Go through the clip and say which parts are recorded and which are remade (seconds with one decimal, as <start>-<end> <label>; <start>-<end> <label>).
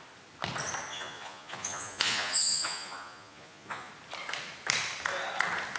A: 0.0-0.9 recorded; 0.9-3.9 remade; 3.9-5.8 recorded